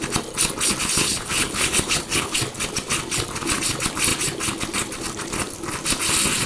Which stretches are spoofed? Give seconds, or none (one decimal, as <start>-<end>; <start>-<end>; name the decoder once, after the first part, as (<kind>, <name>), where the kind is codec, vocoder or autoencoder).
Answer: 1.0-2.3 (codec, HILCodec)